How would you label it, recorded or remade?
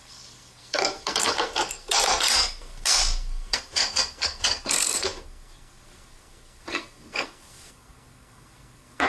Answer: remade